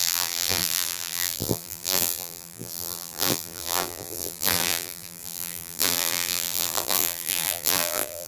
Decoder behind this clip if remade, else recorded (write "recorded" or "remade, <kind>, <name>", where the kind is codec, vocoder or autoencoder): remade, vocoder, BigVGAN v2